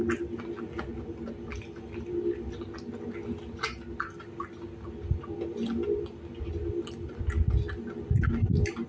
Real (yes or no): yes